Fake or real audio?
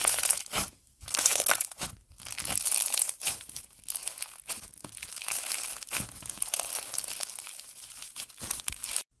fake